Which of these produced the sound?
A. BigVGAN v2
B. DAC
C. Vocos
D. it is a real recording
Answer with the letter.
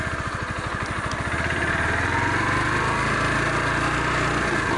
D